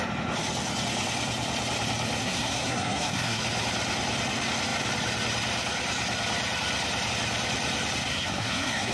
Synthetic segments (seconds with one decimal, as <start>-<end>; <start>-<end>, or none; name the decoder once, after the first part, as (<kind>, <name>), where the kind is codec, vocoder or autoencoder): 2.2-3.4 (codec, SNAC); 8.1-8.9